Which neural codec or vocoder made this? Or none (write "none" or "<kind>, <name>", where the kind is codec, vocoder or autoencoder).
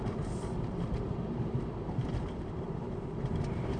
vocoder, BigVGAN v2